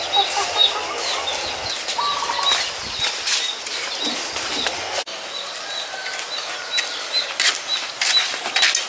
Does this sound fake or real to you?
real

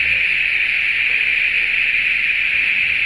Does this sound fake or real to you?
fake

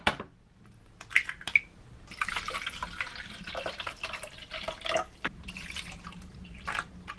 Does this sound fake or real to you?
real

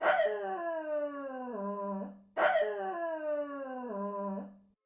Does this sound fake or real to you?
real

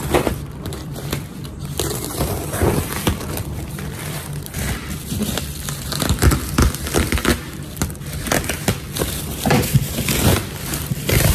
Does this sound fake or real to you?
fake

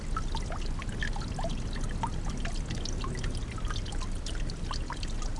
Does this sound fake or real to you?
real